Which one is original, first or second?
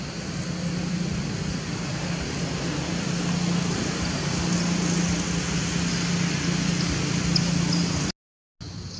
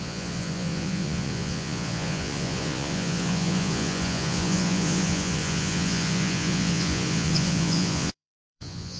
first